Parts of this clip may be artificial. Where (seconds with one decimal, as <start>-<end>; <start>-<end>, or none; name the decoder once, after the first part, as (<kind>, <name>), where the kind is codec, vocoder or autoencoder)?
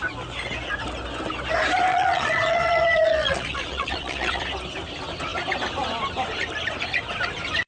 1.9-4.4 (vocoder, Vocos)